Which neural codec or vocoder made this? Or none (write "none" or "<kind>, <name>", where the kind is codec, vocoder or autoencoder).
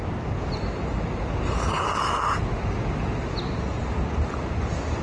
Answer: none